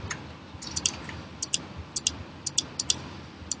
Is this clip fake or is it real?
real